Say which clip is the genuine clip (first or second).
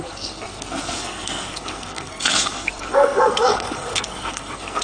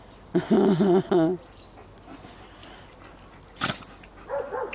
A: second